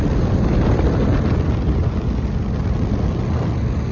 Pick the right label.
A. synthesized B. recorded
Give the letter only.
B